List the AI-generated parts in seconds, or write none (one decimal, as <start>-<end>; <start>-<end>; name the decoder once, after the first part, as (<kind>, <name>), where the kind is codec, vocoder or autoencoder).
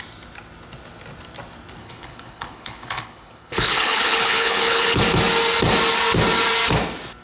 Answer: 1.8-5.0 (codec, HILCodec)